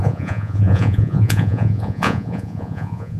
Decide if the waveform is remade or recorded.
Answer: remade